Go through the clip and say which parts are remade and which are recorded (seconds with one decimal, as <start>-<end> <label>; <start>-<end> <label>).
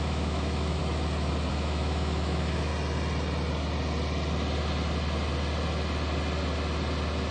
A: 0.0-0.8 remade; 0.8-1.5 recorded; 1.5-2.7 remade; 2.7-7.3 recorded